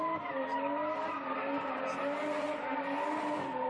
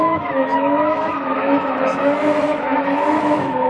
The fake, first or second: second